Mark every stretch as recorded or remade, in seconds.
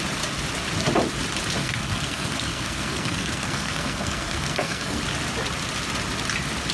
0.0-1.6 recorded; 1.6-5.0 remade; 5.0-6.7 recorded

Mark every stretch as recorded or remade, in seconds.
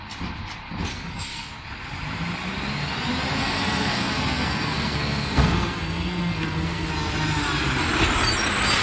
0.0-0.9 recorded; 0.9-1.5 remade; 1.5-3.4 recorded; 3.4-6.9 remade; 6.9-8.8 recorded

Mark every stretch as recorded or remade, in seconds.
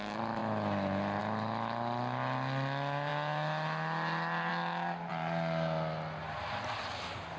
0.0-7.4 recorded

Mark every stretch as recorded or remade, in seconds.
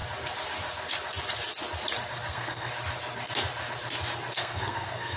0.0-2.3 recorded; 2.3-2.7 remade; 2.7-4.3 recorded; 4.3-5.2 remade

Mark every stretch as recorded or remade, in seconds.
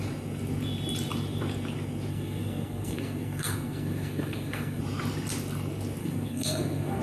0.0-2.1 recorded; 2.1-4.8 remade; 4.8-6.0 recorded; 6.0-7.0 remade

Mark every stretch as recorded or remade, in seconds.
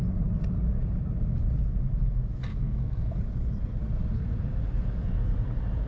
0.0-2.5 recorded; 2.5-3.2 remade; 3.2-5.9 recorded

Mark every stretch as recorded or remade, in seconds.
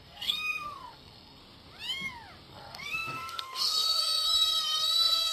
0.0-1.4 remade; 1.4-2.5 recorded; 2.5-5.3 remade